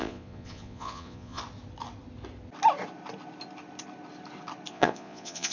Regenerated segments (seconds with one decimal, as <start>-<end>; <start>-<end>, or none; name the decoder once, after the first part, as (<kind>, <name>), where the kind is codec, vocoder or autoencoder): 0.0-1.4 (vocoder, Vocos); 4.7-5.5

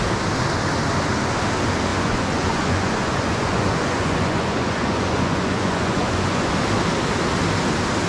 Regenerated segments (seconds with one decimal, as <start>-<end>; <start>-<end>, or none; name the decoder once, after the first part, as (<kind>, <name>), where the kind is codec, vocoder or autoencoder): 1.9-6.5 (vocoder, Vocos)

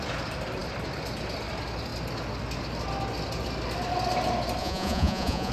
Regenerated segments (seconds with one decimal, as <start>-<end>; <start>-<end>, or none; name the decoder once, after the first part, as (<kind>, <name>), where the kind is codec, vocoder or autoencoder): 4.6-5.5 (vocoder, Vocos)

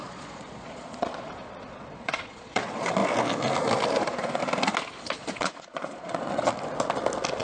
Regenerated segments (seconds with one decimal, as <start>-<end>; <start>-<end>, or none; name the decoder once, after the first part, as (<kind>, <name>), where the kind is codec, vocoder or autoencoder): 0.0-3.0 (vocoder, Vocos); 4.0-4.4; 5.0-6.5